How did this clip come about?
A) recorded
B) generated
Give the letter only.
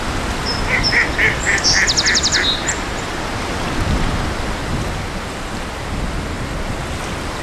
B